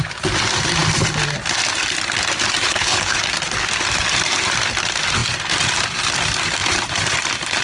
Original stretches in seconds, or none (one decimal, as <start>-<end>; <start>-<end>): 0.0-2.6; 3.2-7.6